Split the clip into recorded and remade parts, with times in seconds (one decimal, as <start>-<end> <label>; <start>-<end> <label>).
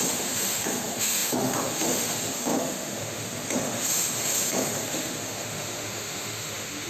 0.0-6.9 remade